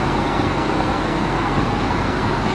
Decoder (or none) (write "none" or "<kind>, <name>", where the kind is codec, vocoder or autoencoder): codec, SNAC